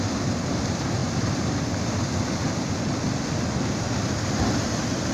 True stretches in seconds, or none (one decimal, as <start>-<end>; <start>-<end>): 0.0-5.1